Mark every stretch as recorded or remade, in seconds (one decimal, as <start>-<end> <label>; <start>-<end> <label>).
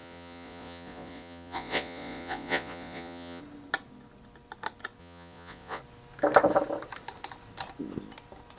0.0-3.4 remade; 3.4-5.0 recorded; 5.0-5.8 remade; 5.8-8.6 recorded